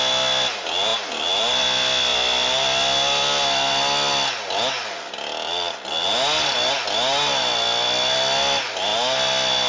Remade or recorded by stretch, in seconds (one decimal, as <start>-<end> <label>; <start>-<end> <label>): 0.0-9.7 recorded